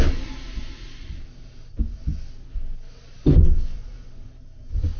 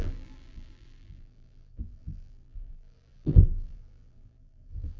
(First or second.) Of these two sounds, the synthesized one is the second